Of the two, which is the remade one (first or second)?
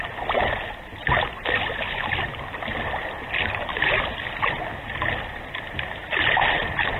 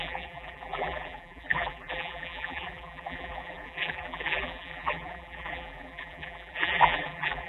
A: second